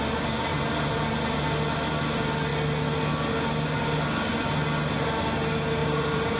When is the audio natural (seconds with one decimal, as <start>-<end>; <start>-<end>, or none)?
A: 0.0-0.5; 1.0-5.8